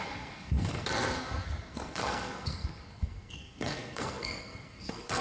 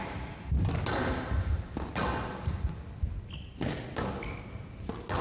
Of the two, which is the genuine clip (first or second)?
second